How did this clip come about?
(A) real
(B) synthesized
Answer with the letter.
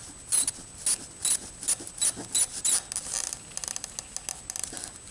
A